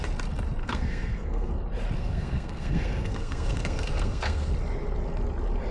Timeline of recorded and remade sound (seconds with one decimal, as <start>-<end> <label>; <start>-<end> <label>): 0.0-0.6 recorded; 0.6-1.5 remade; 1.5-2.0 recorded; 2.0-4.5 remade; 4.5-5.7 recorded